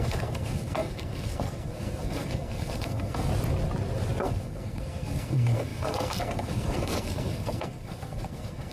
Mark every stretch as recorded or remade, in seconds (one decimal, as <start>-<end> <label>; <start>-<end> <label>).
0.0-3.3 remade; 3.3-4.2 recorded; 4.2-8.7 remade